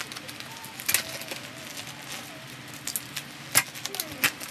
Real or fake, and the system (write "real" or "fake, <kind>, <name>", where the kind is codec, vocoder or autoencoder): real